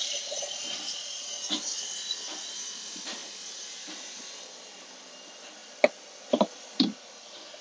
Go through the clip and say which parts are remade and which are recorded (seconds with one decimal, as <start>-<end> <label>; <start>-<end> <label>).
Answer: 0.0-7.6 recorded